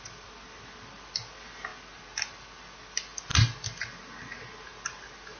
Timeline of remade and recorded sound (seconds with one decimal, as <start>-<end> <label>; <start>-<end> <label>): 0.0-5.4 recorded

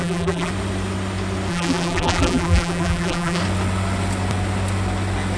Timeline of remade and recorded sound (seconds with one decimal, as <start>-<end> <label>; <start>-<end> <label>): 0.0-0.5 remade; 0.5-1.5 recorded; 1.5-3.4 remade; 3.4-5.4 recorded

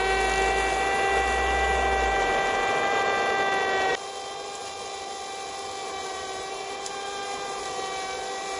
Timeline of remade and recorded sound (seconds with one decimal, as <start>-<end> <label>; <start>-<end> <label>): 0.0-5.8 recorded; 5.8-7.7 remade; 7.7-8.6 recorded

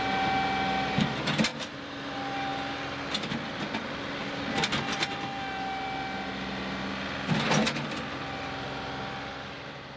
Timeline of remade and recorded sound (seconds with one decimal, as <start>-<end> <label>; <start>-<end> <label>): 0.0-1.5 recorded; 1.5-2.0 remade; 2.0-10.0 recorded

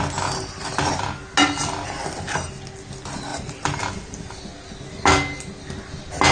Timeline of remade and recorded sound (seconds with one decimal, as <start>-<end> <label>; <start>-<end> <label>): 0.0-3.3 recorded; 3.3-3.8 remade; 3.8-6.3 recorded